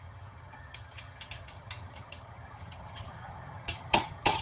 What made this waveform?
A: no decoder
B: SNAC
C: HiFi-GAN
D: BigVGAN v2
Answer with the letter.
C